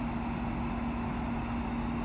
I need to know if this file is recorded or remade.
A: recorded